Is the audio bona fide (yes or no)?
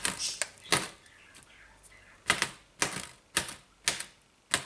yes